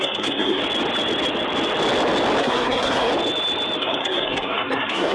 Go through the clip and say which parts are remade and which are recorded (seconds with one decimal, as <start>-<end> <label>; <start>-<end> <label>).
0.0-0.6 remade; 0.6-2.4 recorded; 2.4-3.1 remade; 3.1-3.8 recorded; 3.8-5.1 remade